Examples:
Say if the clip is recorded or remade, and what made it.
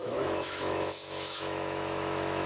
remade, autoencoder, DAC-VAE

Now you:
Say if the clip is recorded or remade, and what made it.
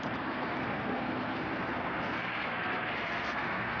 remade, codec, SNAC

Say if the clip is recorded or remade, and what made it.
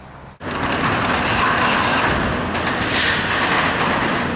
recorded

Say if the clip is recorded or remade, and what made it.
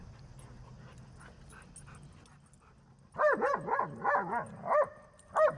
recorded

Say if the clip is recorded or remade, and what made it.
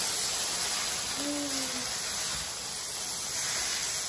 recorded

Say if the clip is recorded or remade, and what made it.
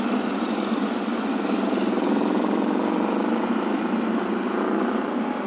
recorded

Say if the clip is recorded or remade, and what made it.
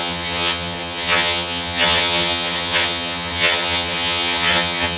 remade, vocoder, HiFi-GAN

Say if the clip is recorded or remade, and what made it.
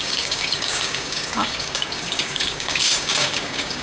remade, codec, DAC